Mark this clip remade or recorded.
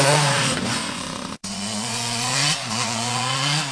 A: remade